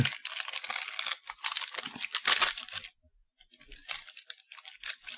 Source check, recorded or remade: recorded